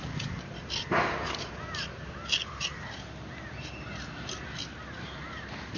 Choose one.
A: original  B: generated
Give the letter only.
A